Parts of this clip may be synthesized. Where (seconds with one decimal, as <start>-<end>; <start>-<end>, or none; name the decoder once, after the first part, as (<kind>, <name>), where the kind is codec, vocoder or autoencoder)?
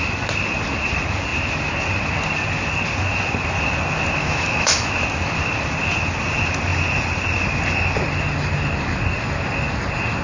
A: 4.2-4.9 (autoencoder, DAC-VAE)